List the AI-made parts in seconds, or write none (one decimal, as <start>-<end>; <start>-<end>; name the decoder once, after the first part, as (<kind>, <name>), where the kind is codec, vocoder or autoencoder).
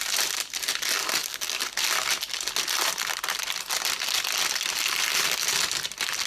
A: none